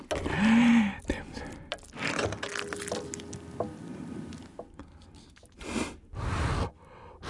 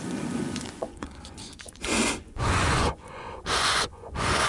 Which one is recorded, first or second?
first